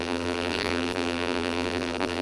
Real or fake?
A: fake